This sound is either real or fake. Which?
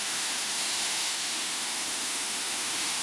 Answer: fake